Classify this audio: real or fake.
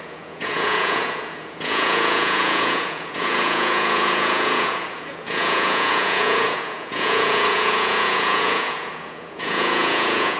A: fake